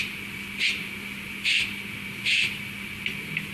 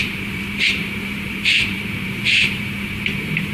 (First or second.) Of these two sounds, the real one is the first